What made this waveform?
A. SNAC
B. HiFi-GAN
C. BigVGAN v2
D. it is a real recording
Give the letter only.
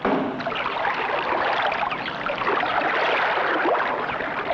D